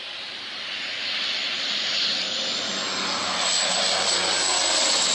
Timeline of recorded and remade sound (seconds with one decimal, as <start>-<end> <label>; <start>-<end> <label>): 0.0-0.6 remade; 0.6-5.1 recorded